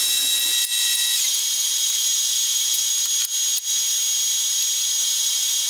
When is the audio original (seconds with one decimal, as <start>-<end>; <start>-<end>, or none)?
2.9-5.0